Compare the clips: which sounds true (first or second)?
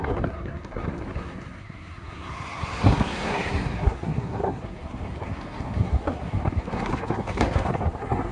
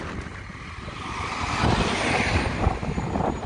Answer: second